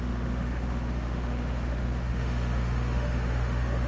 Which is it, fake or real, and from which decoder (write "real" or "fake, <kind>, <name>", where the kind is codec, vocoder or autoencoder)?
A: fake, autoencoder, DAC-VAE